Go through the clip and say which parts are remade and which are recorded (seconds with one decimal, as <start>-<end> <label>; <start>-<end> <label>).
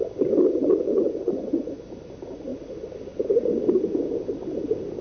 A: 0.0-0.6 recorded; 0.6-1.7 remade; 1.7-5.0 recorded